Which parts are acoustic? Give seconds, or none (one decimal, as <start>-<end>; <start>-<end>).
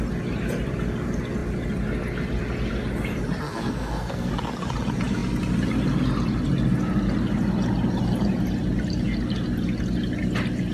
0.0-3.5; 4.3-10.7